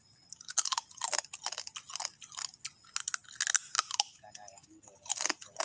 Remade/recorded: recorded